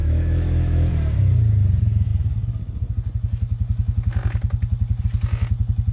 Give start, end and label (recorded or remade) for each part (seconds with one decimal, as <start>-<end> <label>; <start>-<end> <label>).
0.0-0.9 remade; 0.9-5.9 recorded